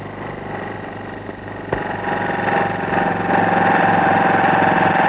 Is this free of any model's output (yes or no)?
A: yes